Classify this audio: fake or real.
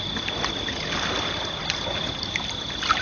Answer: real